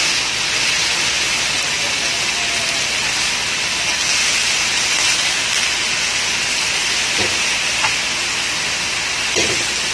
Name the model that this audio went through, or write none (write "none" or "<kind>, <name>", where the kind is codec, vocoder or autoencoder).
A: none